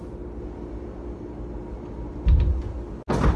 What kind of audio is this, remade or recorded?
recorded